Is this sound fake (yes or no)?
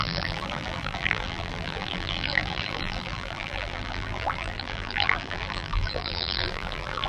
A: yes